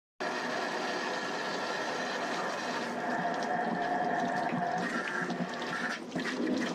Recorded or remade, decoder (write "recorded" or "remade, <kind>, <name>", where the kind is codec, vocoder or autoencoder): recorded